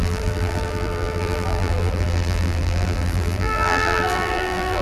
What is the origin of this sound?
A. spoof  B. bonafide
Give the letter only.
A